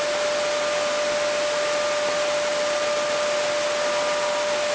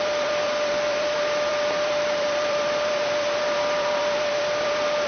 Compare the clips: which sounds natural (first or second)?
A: first